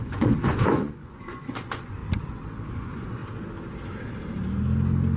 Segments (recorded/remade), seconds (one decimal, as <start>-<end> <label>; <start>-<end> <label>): 0.0-2.0 remade; 2.0-2.7 recorded; 2.7-3.2 remade; 3.2-5.2 recorded